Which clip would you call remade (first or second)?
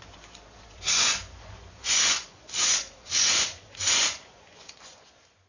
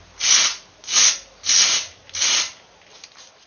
first